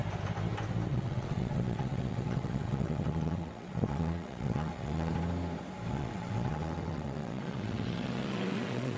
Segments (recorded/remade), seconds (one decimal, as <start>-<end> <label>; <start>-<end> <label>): 0.0-0.9 recorded; 0.9-5.1 remade; 5.1-5.9 recorded; 5.9-9.0 remade